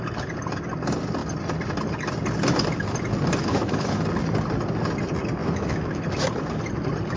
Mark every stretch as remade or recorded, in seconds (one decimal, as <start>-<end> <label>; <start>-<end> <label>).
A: 0.0-3.4 recorded; 3.4-4.0 remade; 4.0-5.4 recorded; 5.4-6.0 remade; 6.0-7.2 recorded

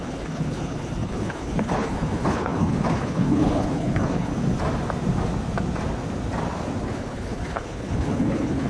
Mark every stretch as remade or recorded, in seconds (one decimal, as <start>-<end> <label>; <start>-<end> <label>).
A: 0.0-4.3 remade; 4.3-6.8 recorded; 6.8-8.7 remade

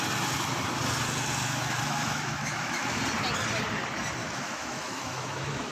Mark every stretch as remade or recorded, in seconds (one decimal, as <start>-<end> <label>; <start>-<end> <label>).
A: 0.0-1.4 recorded; 1.4-3.0 remade; 3.0-4.2 recorded; 4.2-5.7 remade

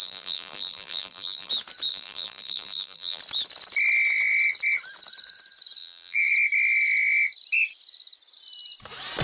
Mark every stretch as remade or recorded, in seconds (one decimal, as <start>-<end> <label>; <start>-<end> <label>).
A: 0.0-1.5 remade; 1.5-1.9 recorded; 1.9-3.2 remade; 3.2-5.8 recorded; 5.8-6.3 remade; 6.3-9.2 recorded